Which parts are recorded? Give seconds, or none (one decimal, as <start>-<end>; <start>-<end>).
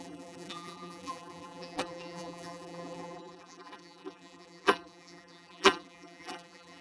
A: none